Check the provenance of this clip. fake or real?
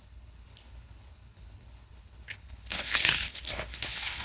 fake